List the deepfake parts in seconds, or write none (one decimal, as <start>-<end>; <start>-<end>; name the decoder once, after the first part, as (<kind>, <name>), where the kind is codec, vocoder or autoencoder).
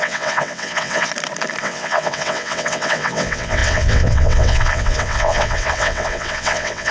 0.0-1.1 (vocoder, WaveNeXt); 1.6-6.9